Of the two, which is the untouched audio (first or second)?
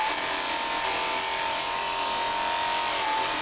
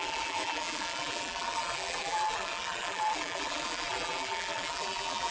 first